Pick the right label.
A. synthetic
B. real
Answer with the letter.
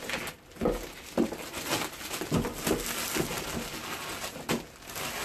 B